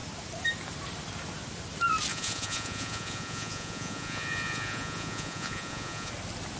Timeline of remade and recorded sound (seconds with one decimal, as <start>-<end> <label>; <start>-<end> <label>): 0.0-2.1 recorded; 2.1-6.1 remade; 6.1-6.6 recorded

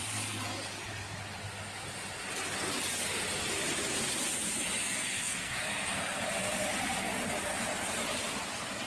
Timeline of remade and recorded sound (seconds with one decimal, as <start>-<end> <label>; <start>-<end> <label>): 0.0-4.8 recorded; 4.8-6.2 remade; 6.2-8.9 recorded

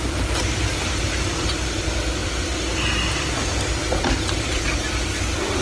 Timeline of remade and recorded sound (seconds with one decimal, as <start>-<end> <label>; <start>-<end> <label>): 0.0-5.6 recorded

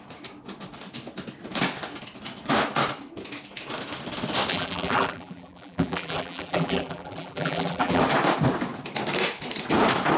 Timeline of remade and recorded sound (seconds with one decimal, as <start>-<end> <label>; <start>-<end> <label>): 0.0-4.5 recorded; 4.5-8.0 remade; 8.0-10.2 recorded

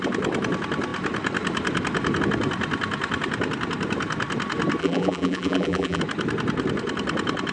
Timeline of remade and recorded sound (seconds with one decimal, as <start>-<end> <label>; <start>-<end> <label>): 0.0-4.8 recorded; 4.8-6.0 remade; 6.0-7.5 recorded

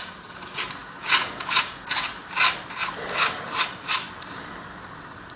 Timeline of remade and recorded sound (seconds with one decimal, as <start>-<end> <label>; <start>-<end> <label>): 0.0-2.1 remade; 2.1-5.4 recorded

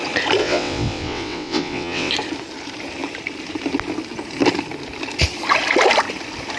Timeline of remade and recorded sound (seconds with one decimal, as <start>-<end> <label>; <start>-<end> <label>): 0.0-0.4 recorded; 0.4-2.1 remade; 2.1-6.6 recorded

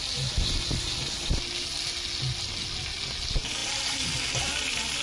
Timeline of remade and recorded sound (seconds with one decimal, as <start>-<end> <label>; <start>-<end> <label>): 0.0-5.0 recorded